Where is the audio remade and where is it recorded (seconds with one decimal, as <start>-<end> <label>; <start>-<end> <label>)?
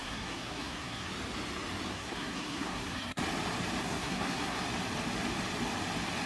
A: 0.0-1.1 remade; 1.1-1.9 recorded; 1.9-3.2 remade; 3.2-3.8 recorded; 3.8-4.6 remade; 4.6-6.3 recorded